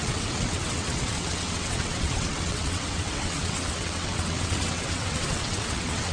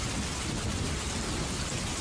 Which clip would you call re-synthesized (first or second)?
first